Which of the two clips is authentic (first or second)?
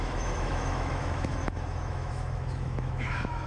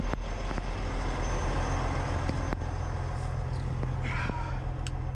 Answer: second